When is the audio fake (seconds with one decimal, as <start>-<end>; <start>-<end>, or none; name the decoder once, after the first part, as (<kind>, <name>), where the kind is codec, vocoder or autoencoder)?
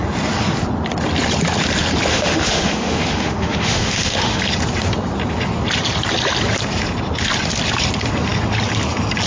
2.1-4.4 (autoencoder, DAC-VAE)